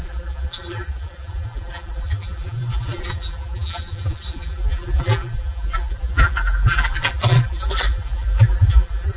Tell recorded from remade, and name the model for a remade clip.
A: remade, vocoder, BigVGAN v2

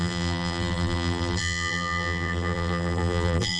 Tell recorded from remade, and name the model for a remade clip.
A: remade, vocoder, BigVGAN v2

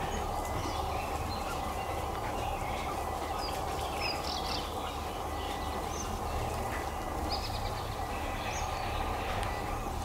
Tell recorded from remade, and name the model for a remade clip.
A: recorded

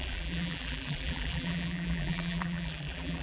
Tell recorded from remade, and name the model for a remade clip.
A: remade, vocoder, BigVGAN v2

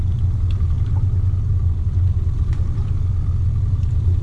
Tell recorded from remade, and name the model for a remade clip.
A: recorded